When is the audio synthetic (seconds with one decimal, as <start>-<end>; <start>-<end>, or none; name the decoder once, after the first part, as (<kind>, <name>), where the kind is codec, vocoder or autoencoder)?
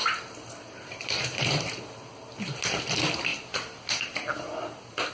0.0-1.8 (vocoder, BigVGAN v2)